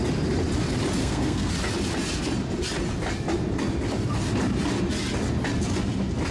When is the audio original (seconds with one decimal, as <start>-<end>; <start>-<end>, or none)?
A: 0.0-1.0; 1.5-6.3